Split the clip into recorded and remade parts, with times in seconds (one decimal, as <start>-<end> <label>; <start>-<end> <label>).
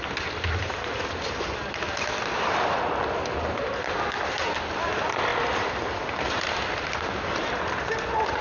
0.0-8.4 recorded